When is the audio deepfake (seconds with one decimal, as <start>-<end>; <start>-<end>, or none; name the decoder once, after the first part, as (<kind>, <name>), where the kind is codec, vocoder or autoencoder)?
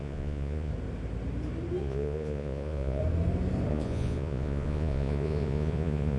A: 0.0-0.7 (vocoder, Vocos); 1.8-3.0; 3.7-6.2